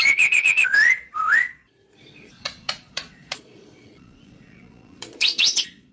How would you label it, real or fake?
fake